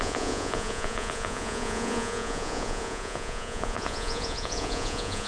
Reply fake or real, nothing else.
fake